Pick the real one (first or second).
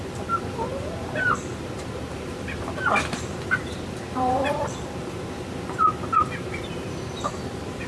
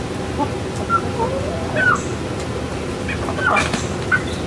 second